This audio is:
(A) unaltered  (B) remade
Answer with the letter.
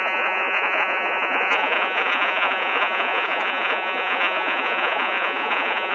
B